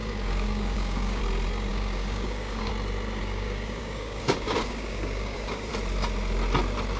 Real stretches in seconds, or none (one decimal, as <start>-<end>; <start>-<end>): 1.2-1.7; 2.7-3.2; 5.7-7.0